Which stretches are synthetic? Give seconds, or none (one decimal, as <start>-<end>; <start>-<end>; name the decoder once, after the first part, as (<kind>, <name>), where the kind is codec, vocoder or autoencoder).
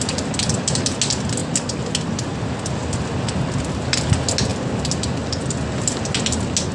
none